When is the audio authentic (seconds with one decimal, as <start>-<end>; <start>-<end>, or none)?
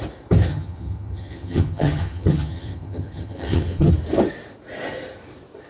0.0-0.5; 3.9-5.7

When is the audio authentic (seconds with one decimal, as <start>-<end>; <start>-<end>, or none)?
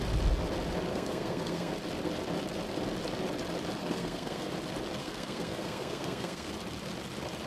0.0-0.9; 1.7-3.8; 4.5-5.0; 6.5-7.5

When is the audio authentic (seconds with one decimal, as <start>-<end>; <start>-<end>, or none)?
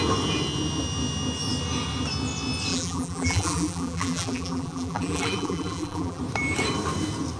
0.0-2.7; 6.2-7.4